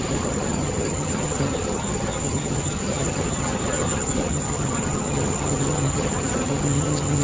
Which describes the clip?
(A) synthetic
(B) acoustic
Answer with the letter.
A